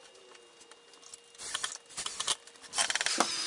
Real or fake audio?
real